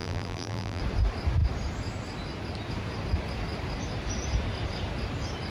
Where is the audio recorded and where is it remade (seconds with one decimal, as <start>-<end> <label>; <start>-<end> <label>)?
0.0-0.8 remade; 0.8-5.5 recorded

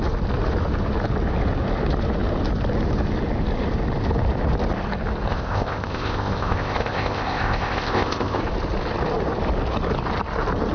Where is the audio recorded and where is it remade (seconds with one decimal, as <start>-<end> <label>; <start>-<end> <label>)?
0.0-5.3 recorded; 5.3-8.4 remade; 8.4-10.7 recorded